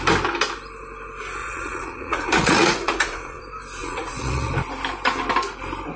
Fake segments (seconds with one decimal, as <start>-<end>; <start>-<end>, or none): 1.4-3.4; 3.8-4.5

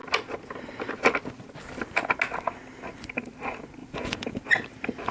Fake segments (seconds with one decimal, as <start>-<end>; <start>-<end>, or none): 3.8-4.4

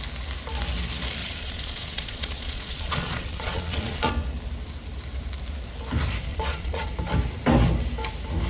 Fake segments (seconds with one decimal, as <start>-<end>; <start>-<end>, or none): 1.2-4.1; 6.3-6.9

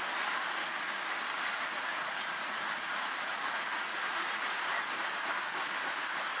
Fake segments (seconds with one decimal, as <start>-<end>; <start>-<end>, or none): 1.5-2.7; 3.3-4.5

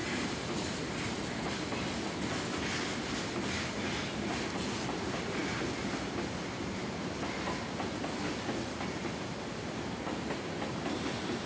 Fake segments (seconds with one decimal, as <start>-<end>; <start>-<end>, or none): none